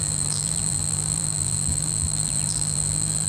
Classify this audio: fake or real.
fake